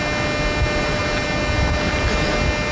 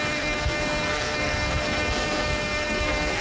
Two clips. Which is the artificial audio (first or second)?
second